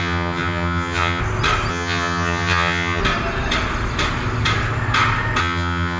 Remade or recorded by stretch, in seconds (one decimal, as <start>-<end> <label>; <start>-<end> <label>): 0.0-1.2 remade; 1.2-1.7 recorded; 1.7-3.0 remade; 3.0-5.4 recorded; 5.4-6.0 remade